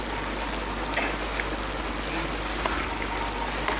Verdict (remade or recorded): recorded